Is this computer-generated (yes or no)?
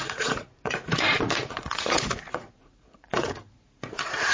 yes